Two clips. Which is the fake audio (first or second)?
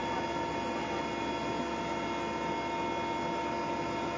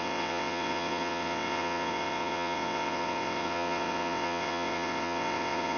second